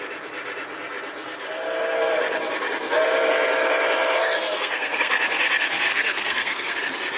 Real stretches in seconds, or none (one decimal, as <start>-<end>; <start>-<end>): 0.0-4.2; 5.1-5.9; 6.8-7.2